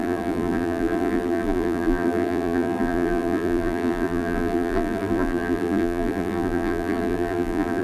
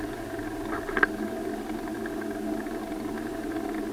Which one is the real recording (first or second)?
second